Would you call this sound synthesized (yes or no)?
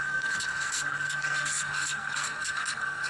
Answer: yes